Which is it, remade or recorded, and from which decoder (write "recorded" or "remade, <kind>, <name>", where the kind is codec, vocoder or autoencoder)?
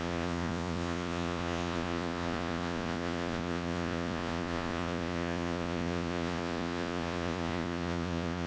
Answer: remade, vocoder, Vocos